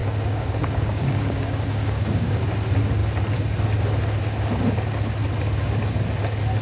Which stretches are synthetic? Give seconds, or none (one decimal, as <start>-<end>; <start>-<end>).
0.0-2.4